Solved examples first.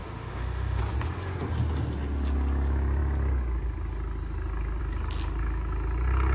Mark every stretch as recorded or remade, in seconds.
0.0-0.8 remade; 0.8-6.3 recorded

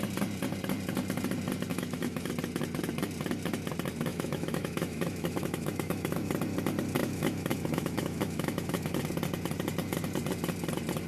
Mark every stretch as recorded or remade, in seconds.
0.0-1.7 recorded; 1.7-2.3 remade; 2.3-4.1 recorded; 4.1-6.3 remade; 6.3-7.0 recorded; 7.0-9.0 remade; 9.0-11.1 recorded

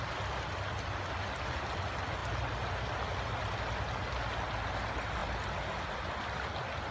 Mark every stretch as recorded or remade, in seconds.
0.0-6.9 recorded

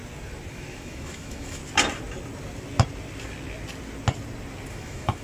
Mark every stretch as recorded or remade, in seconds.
0.0-0.5 recorded; 0.5-1.6 remade; 1.6-4.7 recorded; 4.7-5.2 remade

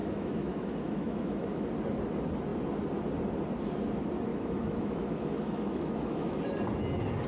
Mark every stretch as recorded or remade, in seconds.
0.0-1.7 remade; 1.7-4.3 recorded; 4.3-6.4 remade; 6.4-7.3 recorded